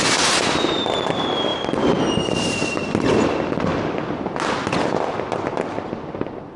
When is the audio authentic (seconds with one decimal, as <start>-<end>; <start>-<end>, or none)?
0.0-1.5; 2.0-6.6